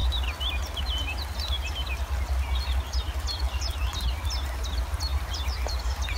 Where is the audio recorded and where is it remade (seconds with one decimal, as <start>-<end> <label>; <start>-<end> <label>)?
0.0-6.2 recorded